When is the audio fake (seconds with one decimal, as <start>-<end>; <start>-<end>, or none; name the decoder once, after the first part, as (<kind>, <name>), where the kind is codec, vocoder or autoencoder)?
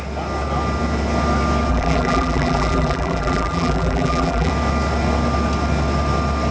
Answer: 1.7-4.5 (vocoder, BigVGAN v2)